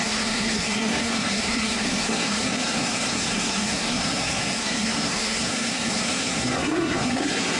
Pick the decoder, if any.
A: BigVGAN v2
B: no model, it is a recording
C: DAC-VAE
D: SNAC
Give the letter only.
D